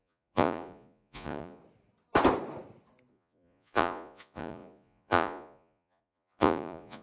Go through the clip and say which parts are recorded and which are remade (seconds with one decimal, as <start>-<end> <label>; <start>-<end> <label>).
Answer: 0.0-1.6 remade; 1.6-3.1 recorded; 3.1-7.0 remade